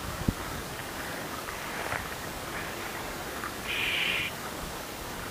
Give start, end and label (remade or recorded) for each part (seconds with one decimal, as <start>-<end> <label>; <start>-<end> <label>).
0.0-5.3 remade

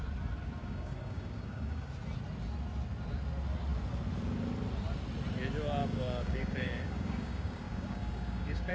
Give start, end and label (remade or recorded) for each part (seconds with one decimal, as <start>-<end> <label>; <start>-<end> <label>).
0.0-0.6 recorded; 0.6-1.9 remade; 1.9-5.8 recorded; 5.8-8.7 remade